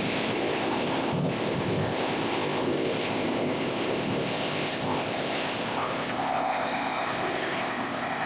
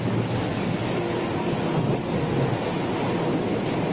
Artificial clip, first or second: first